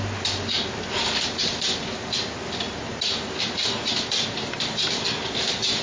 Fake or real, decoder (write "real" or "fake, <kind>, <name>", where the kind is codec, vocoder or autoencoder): real